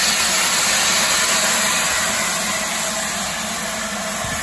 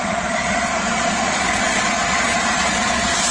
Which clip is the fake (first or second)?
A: second